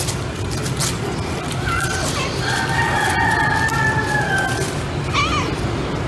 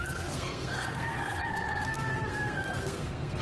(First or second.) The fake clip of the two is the second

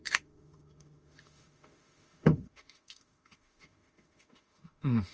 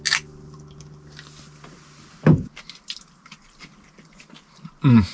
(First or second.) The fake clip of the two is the first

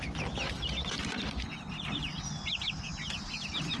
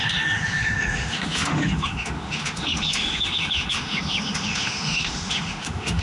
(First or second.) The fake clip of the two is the second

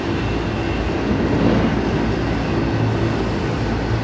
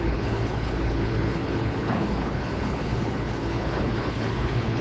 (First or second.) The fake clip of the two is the second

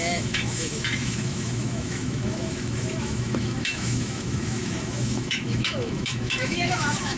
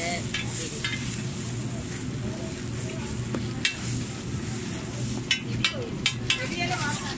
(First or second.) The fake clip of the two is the first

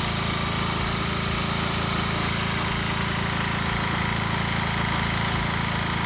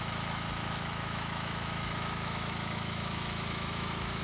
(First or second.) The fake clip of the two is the second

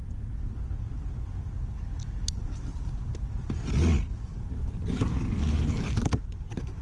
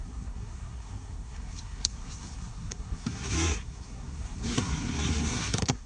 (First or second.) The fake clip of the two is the second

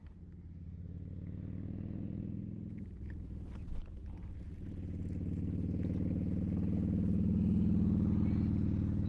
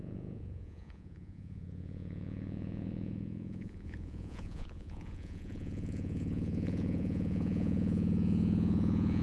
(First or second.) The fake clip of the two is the second